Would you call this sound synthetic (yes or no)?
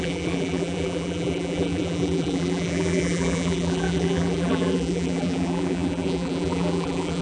yes